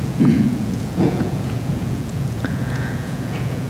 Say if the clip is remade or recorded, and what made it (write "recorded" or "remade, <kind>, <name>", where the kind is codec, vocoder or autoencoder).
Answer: remade, vocoder, Vocos